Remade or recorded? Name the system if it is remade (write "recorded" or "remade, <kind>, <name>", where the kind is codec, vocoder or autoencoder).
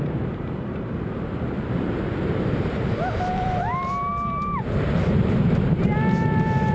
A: remade, vocoder, BigVGAN v2